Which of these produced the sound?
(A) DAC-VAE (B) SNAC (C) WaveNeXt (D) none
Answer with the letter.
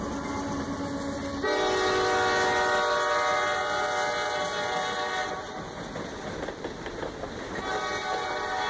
D